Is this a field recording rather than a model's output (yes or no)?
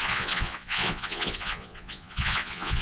no